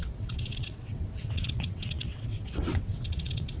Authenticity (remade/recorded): remade